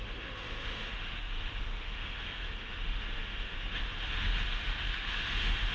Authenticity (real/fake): fake